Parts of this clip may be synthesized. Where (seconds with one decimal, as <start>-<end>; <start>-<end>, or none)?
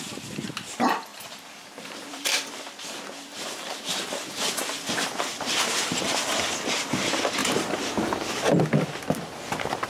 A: 1.1-2.5; 3.3-4.5; 5.3-6.3